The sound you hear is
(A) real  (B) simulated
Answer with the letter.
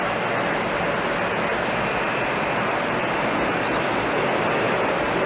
A